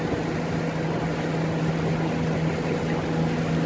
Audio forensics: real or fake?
real